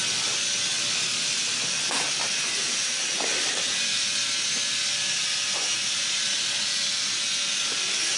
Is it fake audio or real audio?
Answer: real